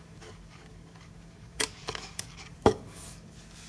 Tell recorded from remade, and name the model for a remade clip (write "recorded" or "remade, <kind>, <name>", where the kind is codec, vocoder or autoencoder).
remade, codec, DAC